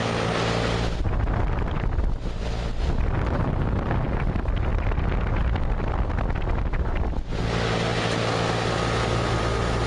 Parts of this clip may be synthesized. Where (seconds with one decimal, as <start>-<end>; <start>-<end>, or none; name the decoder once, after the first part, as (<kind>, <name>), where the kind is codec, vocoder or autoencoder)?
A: none